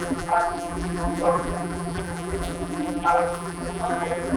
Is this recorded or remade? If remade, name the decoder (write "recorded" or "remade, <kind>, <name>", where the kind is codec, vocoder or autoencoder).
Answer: remade, vocoder, BigVGAN v2